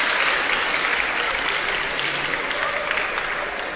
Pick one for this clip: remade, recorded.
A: recorded